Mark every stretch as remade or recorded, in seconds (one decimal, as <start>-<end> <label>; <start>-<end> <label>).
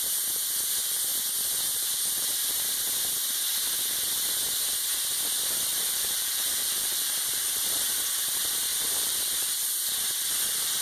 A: 0.0-5.7 recorded; 5.7-7.5 remade; 7.5-8.7 recorded; 8.7-9.5 remade; 9.5-10.8 recorded